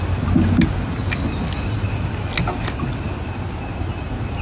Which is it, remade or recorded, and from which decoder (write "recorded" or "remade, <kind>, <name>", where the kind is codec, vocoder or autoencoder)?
recorded